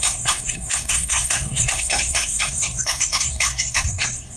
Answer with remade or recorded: remade